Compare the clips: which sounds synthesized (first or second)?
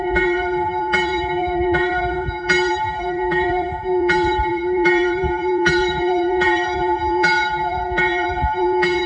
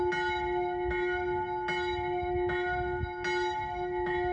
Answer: first